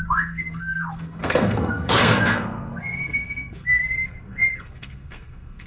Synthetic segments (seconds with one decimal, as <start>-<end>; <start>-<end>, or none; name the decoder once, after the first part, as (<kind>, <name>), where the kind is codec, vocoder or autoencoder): 0.0-5.7 (codec, SNAC)